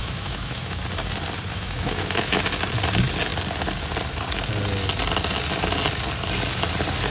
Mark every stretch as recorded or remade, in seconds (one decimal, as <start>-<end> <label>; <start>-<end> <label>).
0.0-0.8 remade; 0.8-1.5 recorded; 1.5-2.4 remade; 2.4-7.1 recorded